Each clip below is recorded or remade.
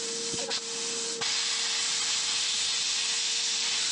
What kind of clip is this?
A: recorded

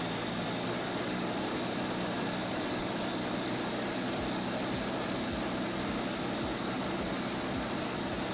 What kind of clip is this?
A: recorded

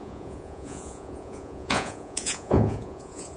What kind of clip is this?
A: remade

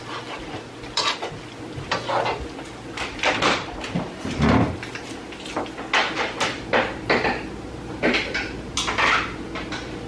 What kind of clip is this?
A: recorded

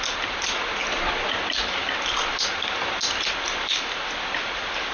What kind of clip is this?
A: recorded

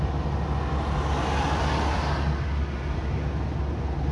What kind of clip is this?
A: recorded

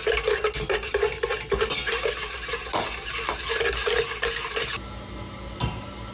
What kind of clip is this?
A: recorded